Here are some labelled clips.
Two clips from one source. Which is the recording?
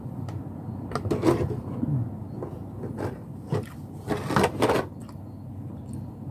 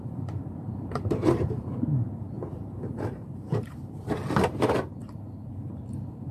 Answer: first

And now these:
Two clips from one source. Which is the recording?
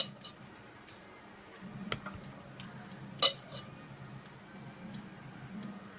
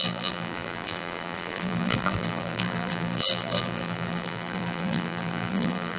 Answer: first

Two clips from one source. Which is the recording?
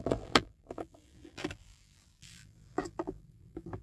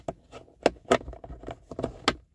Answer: second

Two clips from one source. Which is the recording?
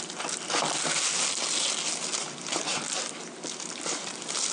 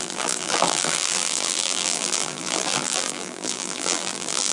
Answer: first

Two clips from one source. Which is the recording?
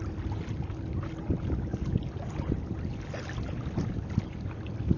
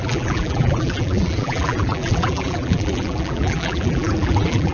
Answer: first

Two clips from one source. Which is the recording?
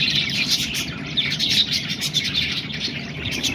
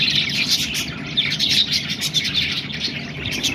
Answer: second